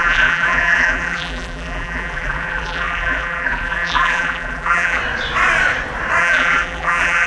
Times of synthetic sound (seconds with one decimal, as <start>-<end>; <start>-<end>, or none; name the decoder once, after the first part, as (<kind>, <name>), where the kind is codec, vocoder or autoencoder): 0.0-5.0 (vocoder, BigVGAN v2); 6.2-7.3